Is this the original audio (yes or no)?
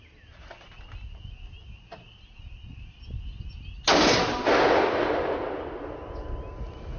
yes